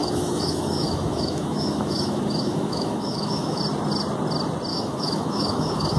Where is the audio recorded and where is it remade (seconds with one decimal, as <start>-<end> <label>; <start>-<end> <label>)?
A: 0.0-3.6 remade; 3.6-4.7 recorded; 4.7-6.0 remade